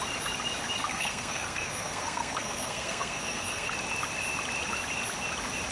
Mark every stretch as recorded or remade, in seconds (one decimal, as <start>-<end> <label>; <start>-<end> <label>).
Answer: 0.0-0.9 recorded; 0.9-3.7 remade; 3.7-5.7 recorded